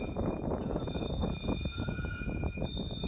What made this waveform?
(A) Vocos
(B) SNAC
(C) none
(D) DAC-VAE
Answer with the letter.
A